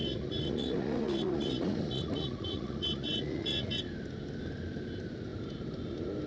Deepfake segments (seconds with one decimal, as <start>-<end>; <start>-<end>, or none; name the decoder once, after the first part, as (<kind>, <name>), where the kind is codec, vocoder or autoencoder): 0.0-3.8 (vocoder, Vocos)

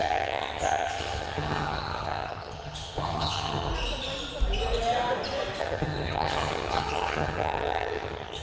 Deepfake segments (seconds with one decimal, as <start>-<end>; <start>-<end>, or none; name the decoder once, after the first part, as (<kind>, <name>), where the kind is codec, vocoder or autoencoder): 0.0-3.7 (vocoder, HiFi-GAN); 5.6-8.4

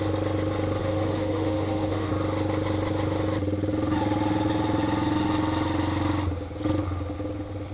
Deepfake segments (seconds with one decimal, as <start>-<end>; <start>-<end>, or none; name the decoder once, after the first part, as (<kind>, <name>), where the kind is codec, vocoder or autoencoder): 0.8-2.1 (autoencoder, DAC-VAE)

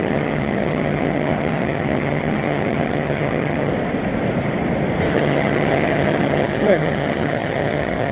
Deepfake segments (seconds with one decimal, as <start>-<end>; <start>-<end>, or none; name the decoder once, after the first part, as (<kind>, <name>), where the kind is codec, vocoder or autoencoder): 0.0-3.7 (vocoder, HiFi-GAN); 5.1-8.1